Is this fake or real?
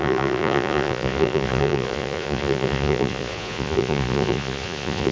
fake